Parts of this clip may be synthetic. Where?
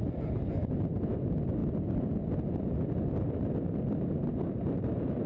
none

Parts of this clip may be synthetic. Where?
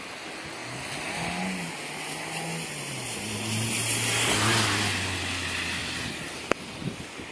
5.8-6.4 (vocoder, BigVGAN v2)